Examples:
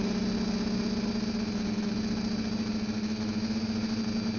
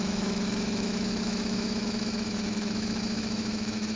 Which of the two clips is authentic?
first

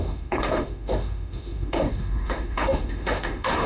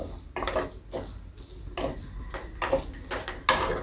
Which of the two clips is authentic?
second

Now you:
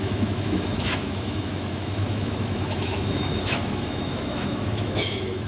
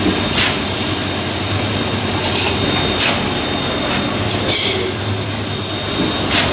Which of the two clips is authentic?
second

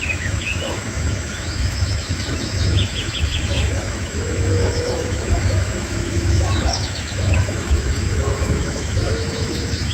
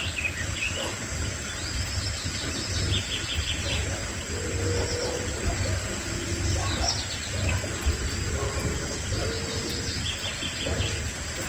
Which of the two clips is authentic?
second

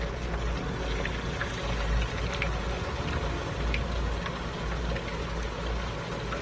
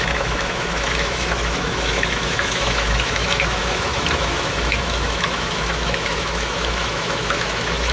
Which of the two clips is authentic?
first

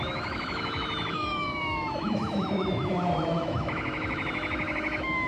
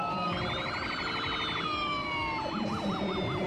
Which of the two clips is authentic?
second